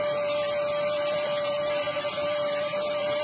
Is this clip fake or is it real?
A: fake